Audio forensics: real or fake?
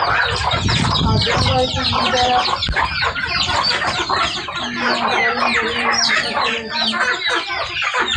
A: real